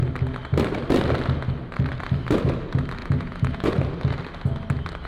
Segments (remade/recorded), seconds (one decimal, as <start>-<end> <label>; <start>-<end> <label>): 0.0-3.0 recorded; 3.0-3.7 remade; 3.7-5.1 recorded